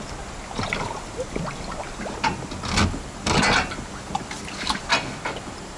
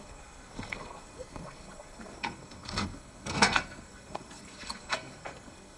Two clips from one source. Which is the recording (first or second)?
first